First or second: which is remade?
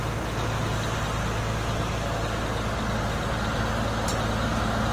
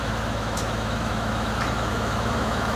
second